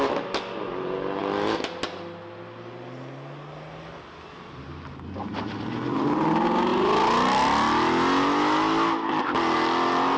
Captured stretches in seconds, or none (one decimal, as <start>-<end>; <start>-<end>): 0.0-10.2